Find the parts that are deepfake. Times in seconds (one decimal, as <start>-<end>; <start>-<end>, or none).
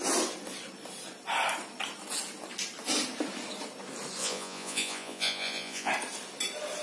4.2-5.9